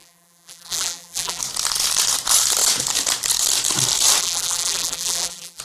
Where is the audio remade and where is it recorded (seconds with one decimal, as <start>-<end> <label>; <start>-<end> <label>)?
0.0-1.4 remade; 1.4-4.2 recorded; 4.2-5.6 remade